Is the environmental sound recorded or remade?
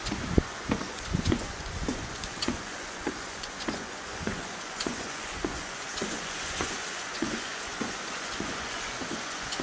remade